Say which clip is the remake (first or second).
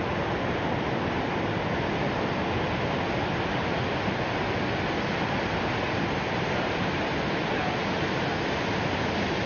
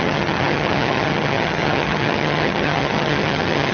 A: second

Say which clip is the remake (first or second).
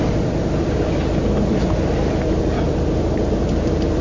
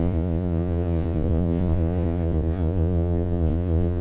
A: second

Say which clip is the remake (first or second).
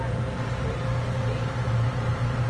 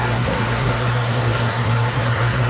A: second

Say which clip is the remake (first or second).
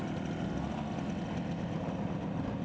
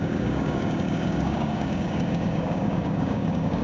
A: second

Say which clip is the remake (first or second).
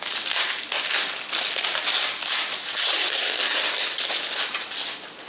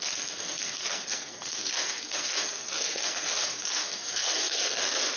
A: second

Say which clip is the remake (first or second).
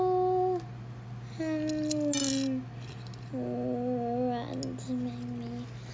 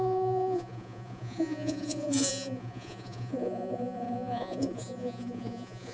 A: second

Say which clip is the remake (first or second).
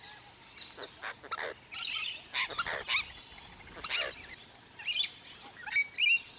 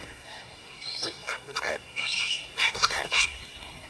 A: second